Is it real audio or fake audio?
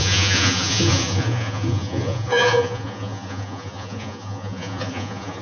fake